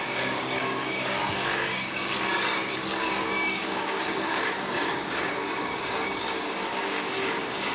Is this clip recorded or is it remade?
remade